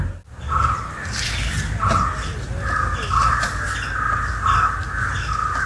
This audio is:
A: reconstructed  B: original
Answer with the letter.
B